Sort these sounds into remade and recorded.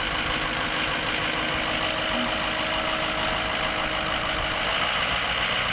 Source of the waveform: recorded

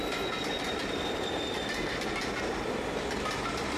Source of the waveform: recorded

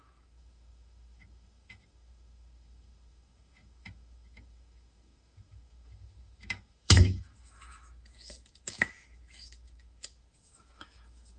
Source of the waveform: remade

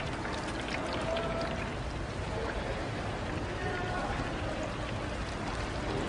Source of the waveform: recorded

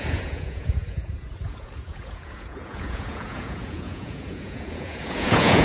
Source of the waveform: remade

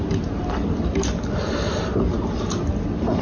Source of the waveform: recorded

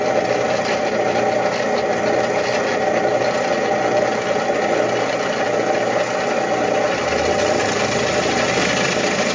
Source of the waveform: recorded